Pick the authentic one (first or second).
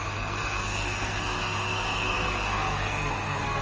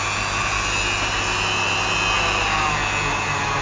second